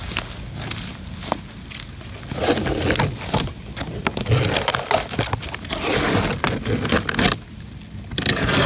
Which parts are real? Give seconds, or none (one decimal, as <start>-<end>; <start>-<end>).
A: 0.0-8.7